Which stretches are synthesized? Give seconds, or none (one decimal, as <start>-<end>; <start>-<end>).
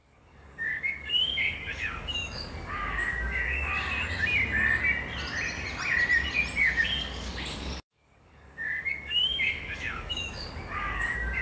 0.0-3.7; 6.6-11.4